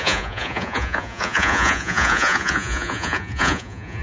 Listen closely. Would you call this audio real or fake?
fake